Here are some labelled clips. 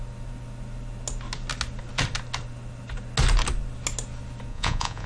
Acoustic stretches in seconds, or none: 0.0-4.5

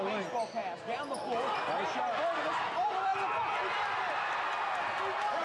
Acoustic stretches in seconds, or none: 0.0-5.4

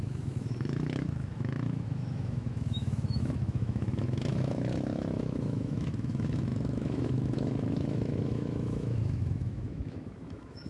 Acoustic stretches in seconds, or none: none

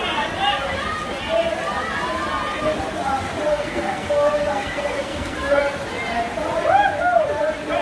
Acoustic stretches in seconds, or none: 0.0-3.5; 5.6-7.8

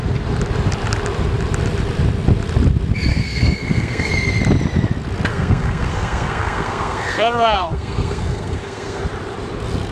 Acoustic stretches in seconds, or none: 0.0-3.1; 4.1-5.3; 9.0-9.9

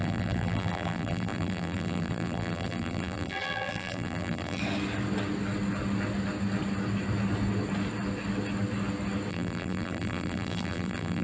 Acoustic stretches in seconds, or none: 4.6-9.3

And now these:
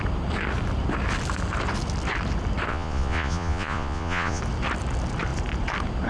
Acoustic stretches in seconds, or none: 0.0-2.7; 4.4-6.1

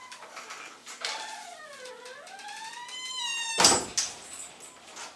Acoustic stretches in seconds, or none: 0.0-5.2